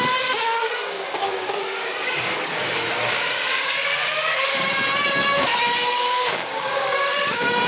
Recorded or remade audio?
remade